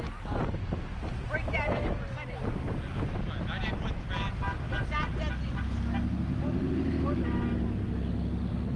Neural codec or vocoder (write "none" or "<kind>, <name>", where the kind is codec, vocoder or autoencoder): none